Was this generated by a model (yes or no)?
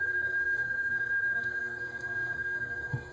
yes